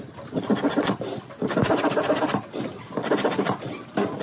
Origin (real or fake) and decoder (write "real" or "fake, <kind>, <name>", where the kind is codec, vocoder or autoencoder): real